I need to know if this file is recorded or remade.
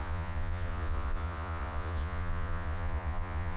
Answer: remade